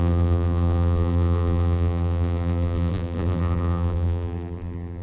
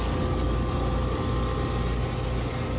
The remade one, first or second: first